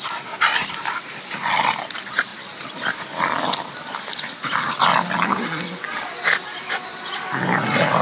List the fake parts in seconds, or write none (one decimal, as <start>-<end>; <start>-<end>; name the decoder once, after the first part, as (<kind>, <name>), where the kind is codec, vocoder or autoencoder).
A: none